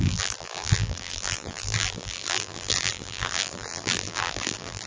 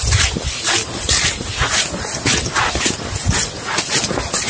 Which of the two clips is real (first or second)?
second